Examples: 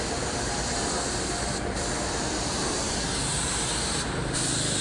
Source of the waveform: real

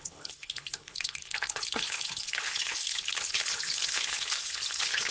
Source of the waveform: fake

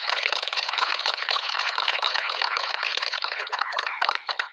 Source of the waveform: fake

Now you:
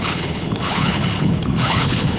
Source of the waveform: fake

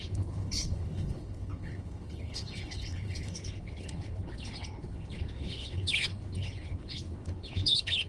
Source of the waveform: fake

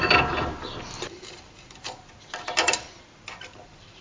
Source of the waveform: real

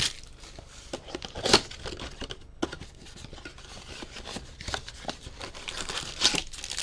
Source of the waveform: real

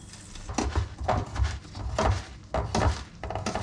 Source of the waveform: real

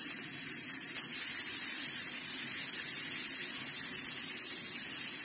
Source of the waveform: real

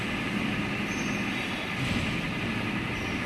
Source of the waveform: real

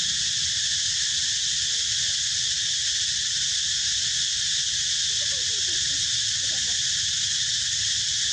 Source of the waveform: real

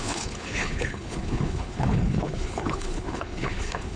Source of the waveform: fake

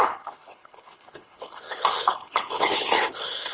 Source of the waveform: fake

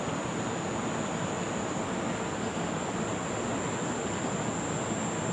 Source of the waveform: real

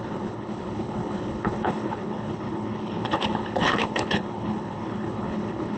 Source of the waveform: fake